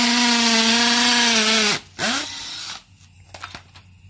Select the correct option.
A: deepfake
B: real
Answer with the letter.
B